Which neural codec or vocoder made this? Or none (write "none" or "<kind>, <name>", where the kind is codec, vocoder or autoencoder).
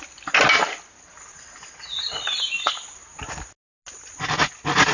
none